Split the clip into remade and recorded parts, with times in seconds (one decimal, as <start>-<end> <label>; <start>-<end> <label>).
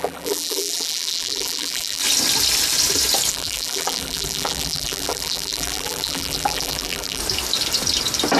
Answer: 0.0-2.0 remade; 2.0-3.3 recorded; 3.3-7.2 remade; 7.2-8.4 recorded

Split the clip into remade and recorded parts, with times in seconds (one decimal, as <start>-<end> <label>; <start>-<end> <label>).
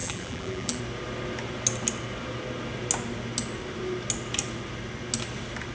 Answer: 0.0-0.8 remade; 0.8-5.7 recorded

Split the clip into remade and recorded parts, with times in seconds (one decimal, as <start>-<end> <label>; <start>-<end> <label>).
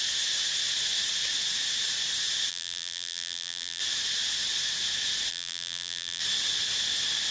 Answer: 0.0-2.5 recorded; 2.5-3.8 remade; 3.8-5.3 recorded; 5.3-6.2 remade; 6.2-7.3 recorded